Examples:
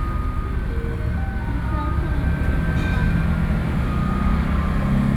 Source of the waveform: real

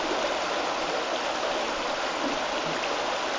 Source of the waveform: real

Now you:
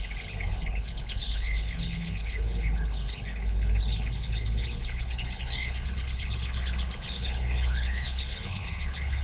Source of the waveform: fake